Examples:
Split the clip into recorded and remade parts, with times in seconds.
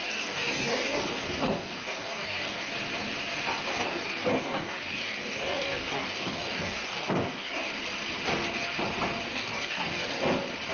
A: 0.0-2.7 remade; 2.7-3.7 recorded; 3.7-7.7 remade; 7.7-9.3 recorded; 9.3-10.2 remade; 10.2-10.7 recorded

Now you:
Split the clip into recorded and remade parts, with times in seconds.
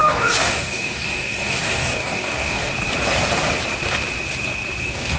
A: 0.0-2.7 remade; 2.7-4.8 recorded; 4.8-5.2 remade